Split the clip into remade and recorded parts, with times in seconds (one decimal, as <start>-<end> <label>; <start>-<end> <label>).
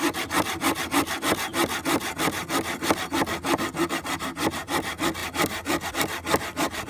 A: 0.0-6.9 recorded